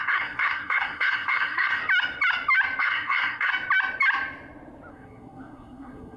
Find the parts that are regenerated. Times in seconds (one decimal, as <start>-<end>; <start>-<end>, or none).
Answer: 0.0-1.8; 2.8-3.5; 4.9-6.2